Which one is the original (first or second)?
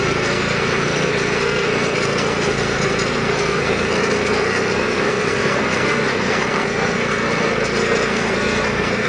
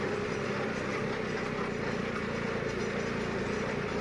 second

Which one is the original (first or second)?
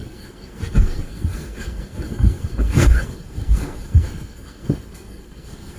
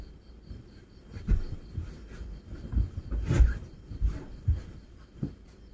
second